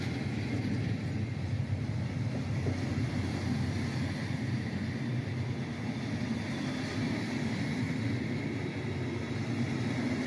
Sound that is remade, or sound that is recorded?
recorded